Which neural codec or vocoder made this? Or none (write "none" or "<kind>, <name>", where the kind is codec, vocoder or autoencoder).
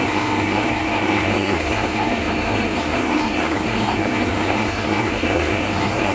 codec, SNAC